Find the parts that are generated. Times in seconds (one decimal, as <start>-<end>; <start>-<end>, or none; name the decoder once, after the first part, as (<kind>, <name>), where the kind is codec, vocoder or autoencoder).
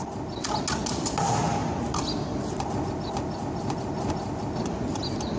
none